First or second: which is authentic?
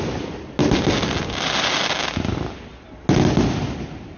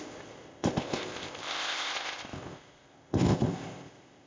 first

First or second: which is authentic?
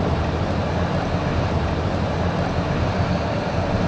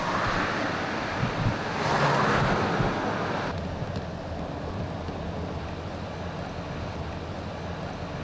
second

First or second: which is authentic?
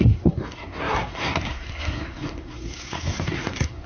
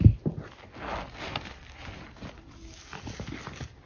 second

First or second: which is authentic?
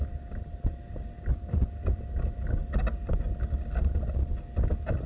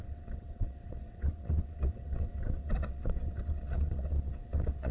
first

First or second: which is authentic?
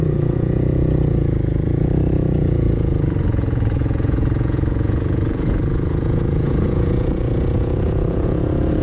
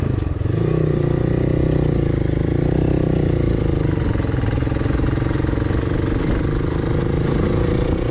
second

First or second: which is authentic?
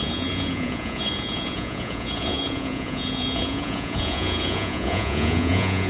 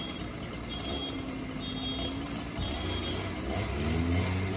second